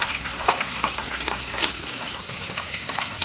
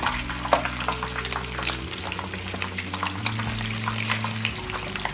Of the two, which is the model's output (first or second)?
first